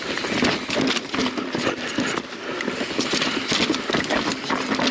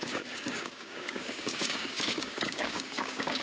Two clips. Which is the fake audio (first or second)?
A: second